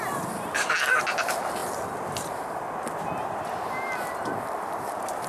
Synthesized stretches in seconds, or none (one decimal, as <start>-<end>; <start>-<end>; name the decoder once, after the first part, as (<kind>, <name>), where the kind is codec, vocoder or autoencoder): none